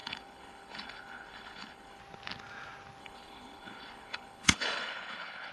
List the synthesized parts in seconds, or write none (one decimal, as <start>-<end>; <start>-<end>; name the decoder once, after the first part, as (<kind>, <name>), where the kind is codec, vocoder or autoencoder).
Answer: 0.0-2.0 (codec, HILCodec); 3.0-5.5